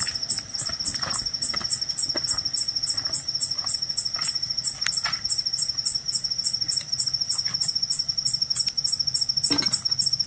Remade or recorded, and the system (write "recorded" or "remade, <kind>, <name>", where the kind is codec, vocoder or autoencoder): recorded